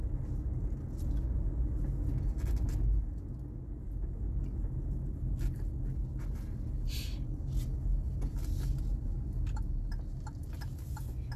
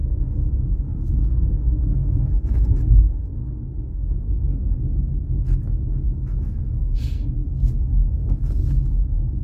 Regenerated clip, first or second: second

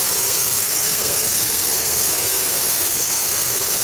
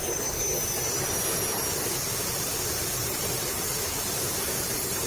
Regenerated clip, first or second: first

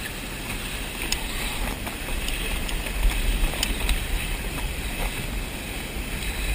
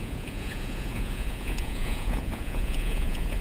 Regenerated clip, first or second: second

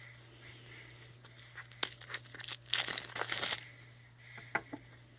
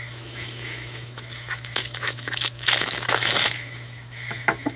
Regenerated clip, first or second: second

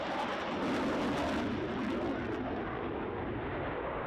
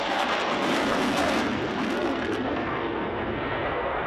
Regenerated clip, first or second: second